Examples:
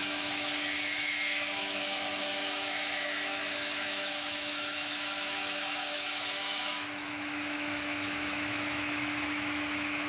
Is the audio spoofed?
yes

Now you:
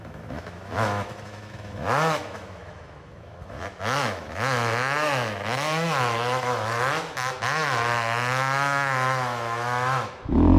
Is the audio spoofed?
yes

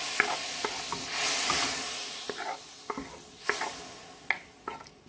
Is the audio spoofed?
no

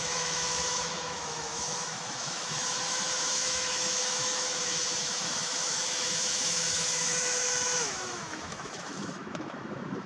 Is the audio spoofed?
yes